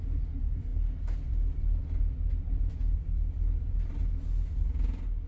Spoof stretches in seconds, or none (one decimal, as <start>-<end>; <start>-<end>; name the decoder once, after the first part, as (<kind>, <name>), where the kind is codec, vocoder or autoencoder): 0.0-0.7 (vocoder, BigVGAN v2); 1.3-4.0